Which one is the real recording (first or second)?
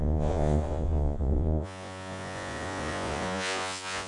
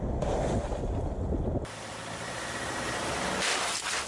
second